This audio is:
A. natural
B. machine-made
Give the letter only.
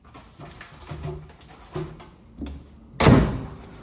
A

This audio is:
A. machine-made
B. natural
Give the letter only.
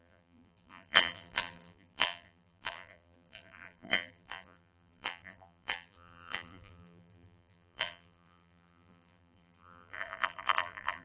A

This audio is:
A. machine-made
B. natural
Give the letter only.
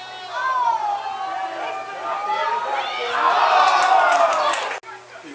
B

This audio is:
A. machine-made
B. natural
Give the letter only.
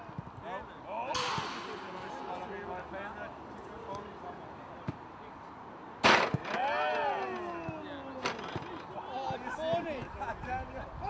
B